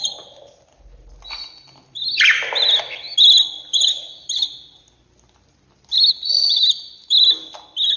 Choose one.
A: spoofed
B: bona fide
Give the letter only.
B